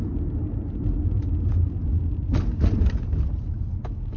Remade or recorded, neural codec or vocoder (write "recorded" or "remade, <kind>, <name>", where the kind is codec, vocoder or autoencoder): recorded